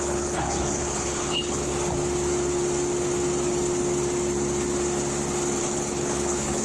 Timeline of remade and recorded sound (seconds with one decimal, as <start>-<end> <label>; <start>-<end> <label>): 0.0-1.7 remade; 1.7-5.6 recorded; 5.6-6.6 remade